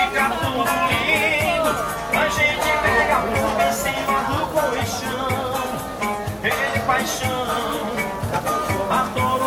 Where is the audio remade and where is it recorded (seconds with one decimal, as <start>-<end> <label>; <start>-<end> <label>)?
0.0-9.5 recorded